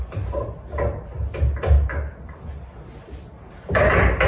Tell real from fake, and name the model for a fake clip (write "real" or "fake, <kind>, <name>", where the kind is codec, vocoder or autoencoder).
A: real